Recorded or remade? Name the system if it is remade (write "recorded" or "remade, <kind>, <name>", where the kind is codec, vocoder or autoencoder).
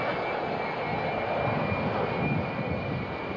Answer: recorded